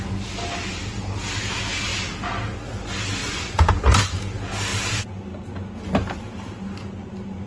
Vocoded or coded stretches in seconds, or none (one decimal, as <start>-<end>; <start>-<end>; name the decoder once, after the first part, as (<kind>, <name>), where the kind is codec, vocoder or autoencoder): 3.2-3.7 (vocoder, Vocos)